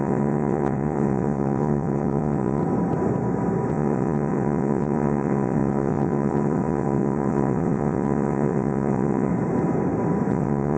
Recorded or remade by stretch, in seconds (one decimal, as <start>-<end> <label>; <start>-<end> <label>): 0.0-2.6 remade; 2.6-3.7 recorded; 3.7-9.3 remade; 9.3-10.3 recorded; 10.3-10.8 remade